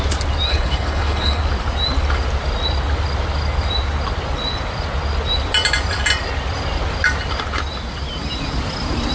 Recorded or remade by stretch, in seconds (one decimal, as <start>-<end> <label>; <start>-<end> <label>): 0.0-0.5 recorded; 0.5-1.4 remade; 1.4-9.1 recorded